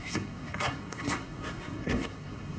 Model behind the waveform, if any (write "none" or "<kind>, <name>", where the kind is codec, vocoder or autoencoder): codec, SNAC